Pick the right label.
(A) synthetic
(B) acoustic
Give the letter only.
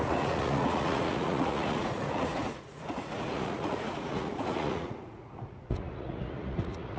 A